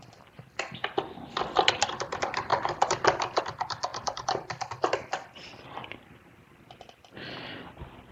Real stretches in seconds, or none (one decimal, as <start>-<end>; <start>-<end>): 0.8-1.4